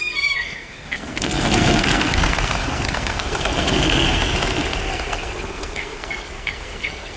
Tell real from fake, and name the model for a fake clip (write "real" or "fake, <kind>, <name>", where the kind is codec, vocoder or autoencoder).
fake, codec, SNAC